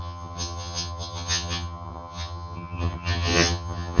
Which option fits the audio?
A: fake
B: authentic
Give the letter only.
A